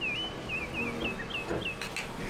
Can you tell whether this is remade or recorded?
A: recorded